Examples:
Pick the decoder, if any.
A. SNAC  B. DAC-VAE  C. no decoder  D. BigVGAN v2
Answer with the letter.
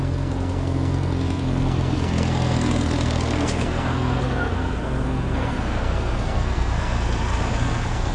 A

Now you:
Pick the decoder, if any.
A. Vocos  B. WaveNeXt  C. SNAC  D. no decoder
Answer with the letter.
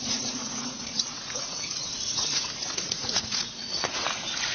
A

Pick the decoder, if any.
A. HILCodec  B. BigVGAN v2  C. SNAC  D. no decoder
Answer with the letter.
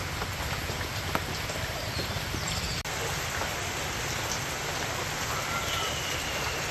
D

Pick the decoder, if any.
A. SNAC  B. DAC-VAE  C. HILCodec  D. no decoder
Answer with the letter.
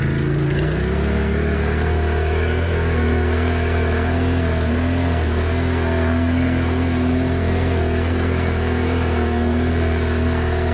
A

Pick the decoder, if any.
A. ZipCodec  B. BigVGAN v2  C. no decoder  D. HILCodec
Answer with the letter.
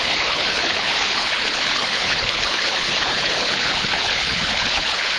D